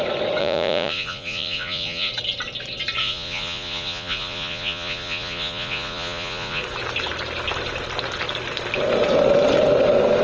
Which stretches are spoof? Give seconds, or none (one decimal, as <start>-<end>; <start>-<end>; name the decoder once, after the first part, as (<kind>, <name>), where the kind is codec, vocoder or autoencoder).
0.4-2.1 (vocoder, Vocos); 3.0-6.6